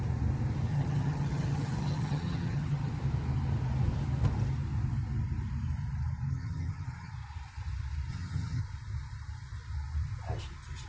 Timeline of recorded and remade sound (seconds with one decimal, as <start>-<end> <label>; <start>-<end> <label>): 0.0-0.7 recorded; 0.7-2.9 remade; 2.9-6.3 recorded; 6.3-7.1 remade; 7.1-8.1 recorded; 8.1-8.6 remade; 8.6-10.9 recorded